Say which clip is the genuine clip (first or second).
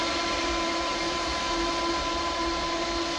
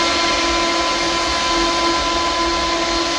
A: second